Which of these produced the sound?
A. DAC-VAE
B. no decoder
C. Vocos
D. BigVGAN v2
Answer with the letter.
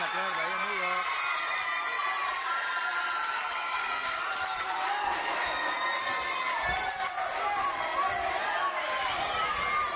B